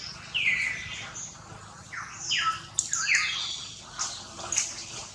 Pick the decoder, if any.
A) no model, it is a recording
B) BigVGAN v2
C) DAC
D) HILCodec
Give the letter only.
A